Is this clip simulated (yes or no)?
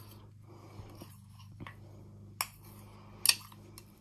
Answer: no